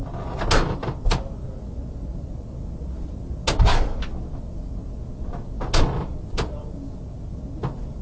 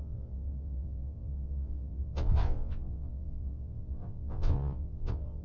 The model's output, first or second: second